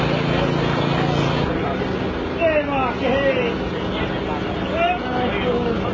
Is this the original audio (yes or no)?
yes